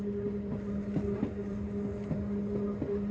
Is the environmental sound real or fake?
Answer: real